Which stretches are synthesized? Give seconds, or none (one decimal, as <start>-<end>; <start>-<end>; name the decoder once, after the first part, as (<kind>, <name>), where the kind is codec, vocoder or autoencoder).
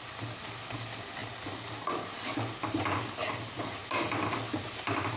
none